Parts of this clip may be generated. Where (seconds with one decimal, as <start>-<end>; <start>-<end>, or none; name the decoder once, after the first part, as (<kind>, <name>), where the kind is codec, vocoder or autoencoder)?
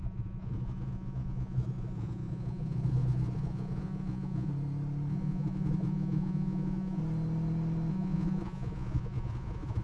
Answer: 0.0-4.5 (vocoder, Vocos); 5.1-7.0; 7.9-9.8